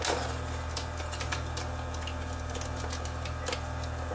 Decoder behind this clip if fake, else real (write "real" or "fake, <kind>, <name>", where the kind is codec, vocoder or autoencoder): real